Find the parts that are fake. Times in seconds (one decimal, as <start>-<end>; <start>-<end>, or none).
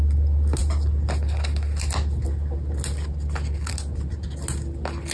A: none